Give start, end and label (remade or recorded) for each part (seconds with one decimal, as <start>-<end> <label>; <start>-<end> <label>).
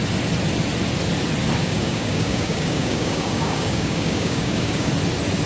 0.0-1.6 recorded; 1.6-4.9 remade; 4.9-5.5 recorded